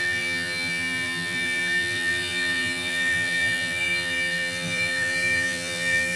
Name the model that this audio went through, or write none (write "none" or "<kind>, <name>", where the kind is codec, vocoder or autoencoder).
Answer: vocoder, BigVGAN v2